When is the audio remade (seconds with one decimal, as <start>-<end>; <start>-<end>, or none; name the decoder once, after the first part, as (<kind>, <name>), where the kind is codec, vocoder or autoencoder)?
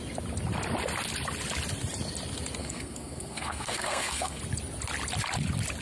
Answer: 2.6-4.4 (codec, SNAC)